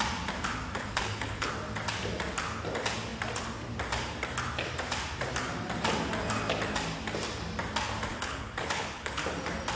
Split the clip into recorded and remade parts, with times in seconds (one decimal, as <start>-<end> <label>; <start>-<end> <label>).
0.0-0.8 recorded; 0.8-1.5 remade; 1.5-8.1 recorded; 8.1-9.2 remade; 9.2-9.8 recorded